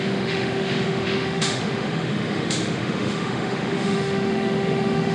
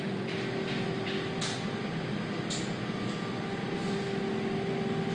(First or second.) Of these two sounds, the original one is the second